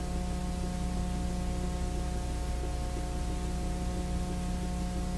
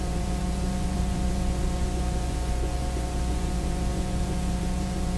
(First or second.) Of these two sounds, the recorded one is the first